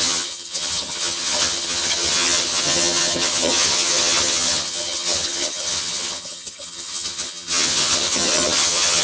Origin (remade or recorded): remade